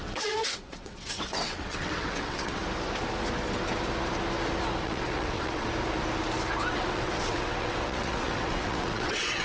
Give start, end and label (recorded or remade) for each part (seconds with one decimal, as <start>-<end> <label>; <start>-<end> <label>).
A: 0.0-2.6 remade; 2.6-4.8 recorded; 4.8-5.7 remade; 5.7-6.7 recorded; 6.7-9.4 remade